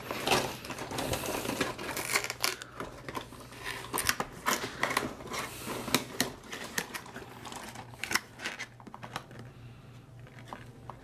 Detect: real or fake real